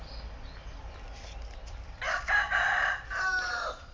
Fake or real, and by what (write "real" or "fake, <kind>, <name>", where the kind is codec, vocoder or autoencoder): real